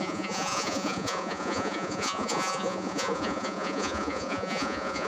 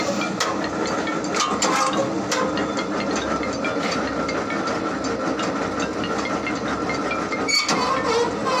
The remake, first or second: first